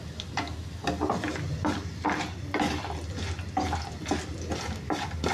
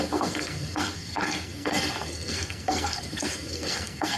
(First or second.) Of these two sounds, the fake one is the second